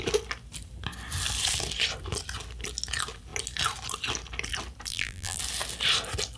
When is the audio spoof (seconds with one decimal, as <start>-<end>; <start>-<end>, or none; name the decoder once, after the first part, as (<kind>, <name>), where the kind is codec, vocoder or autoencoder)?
4.9-5.4 (vocoder, BigVGAN v2)